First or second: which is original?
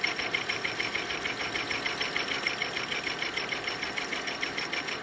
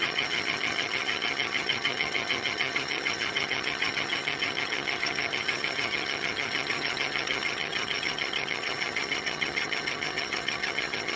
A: first